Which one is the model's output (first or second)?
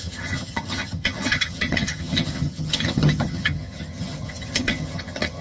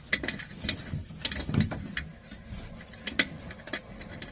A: first